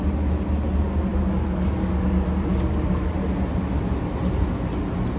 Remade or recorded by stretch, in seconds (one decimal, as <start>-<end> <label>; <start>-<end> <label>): 0.0-1.1 recorded; 1.1-2.1 remade; 2.1-2.5 recorded; 2.5-3.1 remade; 3.1-5.2 recorded